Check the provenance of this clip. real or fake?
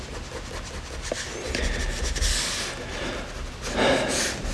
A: real